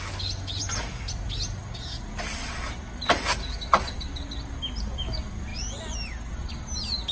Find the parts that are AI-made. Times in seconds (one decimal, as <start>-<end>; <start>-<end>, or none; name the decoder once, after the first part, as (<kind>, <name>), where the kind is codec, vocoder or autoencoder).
none